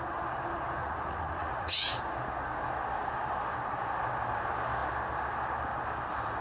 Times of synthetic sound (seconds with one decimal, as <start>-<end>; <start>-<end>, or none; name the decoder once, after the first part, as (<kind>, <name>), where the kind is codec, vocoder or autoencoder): 0.8-2.0 (vocoder, Vocos)